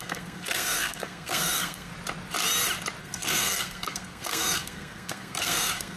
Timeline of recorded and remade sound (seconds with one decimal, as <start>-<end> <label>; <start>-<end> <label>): 0.0-1.9 remade; 1.9-3.0 recorded; 3.0-6.0 remade